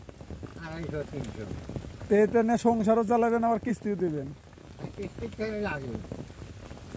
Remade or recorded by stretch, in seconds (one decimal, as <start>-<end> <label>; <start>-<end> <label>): 0.0-4.6 recorded; 4.6-6.0 remade; 6.0-7.0 recorded